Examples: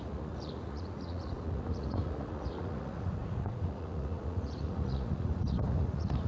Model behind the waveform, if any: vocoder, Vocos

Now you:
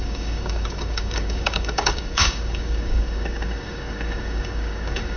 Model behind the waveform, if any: codec, DAC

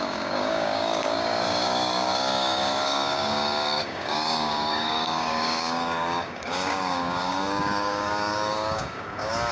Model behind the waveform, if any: codec, DAC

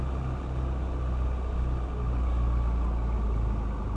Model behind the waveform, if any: none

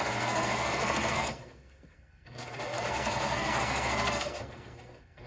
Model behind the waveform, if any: codec, SNAC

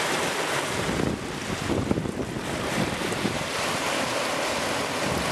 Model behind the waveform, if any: none